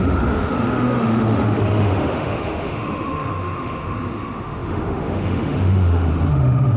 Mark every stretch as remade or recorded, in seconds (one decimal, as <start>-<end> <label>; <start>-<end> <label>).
0.0-6.8 remade